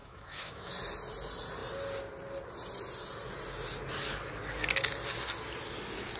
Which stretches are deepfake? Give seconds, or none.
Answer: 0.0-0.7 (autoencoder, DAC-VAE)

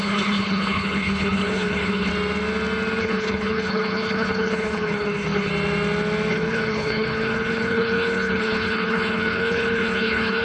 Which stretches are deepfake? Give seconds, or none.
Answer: 0.0-2.1 (codec, HILCodec); 3.0-5.5; 6.3-10.4

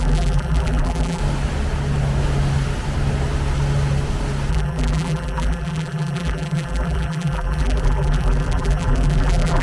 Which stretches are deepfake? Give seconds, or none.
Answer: 0.0-1.2 (vocoder, BigVGAN v2); 4.5-9.6